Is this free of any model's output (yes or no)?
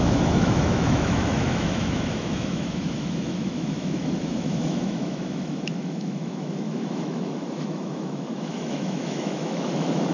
no